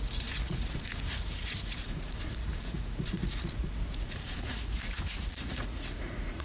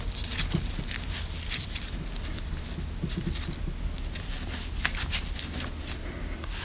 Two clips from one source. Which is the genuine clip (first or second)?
second